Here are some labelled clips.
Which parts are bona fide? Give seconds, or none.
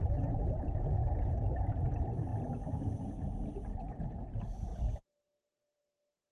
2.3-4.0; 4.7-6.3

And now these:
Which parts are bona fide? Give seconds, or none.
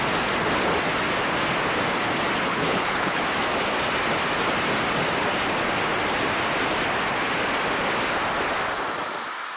0.0-2.5; 3.2-9.6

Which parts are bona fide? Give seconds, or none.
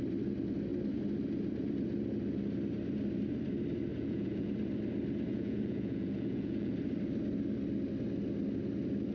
0.0-3.9; 4.5-5.3; 6.7-9.1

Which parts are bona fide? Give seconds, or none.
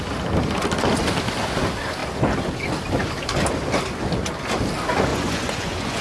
0.0-5.1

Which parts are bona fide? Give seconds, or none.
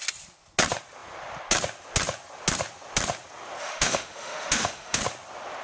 0.0-3.6; 5.0-5.6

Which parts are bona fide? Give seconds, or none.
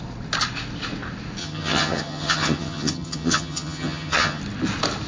0.0-1.4; 4.4-5.1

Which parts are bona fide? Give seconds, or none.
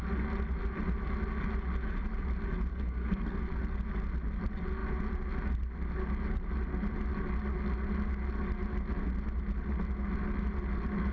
0.0-2.7; 3.4-11.1